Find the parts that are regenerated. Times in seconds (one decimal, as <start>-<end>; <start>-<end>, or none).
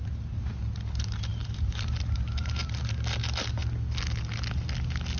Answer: 0.0-0.6; 1.3-2.9